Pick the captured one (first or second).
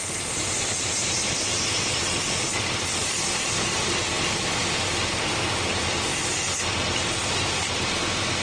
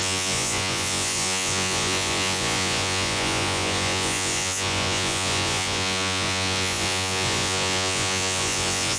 first